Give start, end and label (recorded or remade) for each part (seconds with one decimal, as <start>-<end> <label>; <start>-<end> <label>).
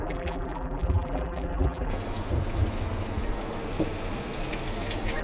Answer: 0.0-1.9 remade; 1.9-5.2 recorded